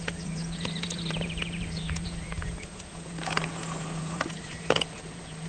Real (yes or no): no